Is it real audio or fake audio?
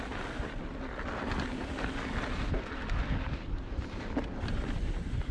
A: real